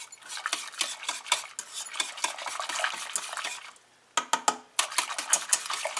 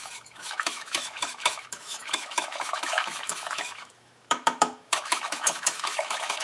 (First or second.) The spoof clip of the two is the second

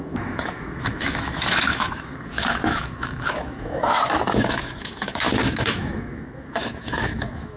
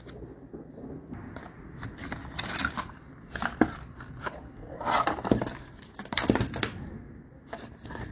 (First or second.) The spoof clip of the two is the first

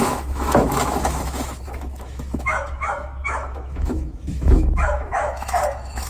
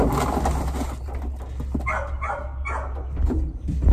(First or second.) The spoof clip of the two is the first